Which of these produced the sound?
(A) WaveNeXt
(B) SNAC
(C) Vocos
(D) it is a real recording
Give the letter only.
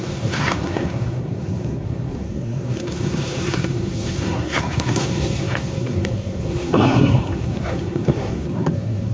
B